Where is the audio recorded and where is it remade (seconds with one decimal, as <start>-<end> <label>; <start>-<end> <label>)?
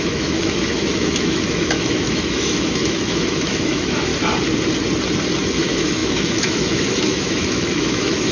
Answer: 0.0-4.1 remade; 4.1-5.6 recorded; 5.6-8.3 remade